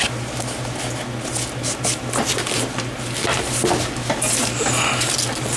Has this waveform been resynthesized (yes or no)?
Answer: no